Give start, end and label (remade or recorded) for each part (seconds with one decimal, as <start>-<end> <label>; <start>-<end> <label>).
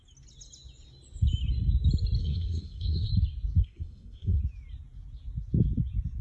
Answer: 0.0-2.2 recorded; 2.2-3.1 remade; 3.1-3.6 recorded; 3.6-4.4 remade; 4.4-6.2 recorded